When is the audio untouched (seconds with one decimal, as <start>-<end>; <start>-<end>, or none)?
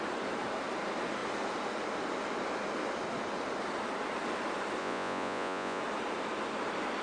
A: 0.0-4.8; 5.8-7.0